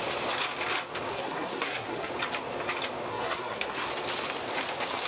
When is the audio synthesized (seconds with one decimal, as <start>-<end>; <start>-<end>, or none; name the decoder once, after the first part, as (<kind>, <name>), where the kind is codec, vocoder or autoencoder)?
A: 1.1-2.1 (codec, SNAC); 3.1-3.9